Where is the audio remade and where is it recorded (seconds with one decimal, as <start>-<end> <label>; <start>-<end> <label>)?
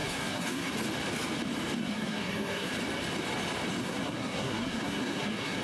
0.0-0.7 remade; 0.7-1.8 recorded; 1.8-2.7 remade; 2.7-3.8 recorded; 3.8-5.6 remade